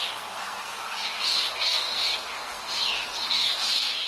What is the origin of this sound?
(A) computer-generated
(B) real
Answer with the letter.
A